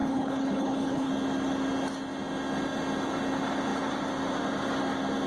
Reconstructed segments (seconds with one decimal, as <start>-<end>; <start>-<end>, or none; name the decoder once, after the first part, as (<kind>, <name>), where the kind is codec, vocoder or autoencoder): 0.0-1.1 (codec, HILCodec)